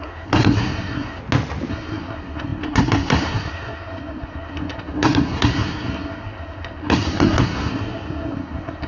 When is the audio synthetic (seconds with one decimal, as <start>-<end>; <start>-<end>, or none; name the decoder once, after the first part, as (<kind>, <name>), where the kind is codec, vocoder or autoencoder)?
0.0-1.2 (codec, SNAC); 1.7-8.9